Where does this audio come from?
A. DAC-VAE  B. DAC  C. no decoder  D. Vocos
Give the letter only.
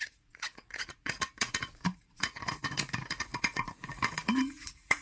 D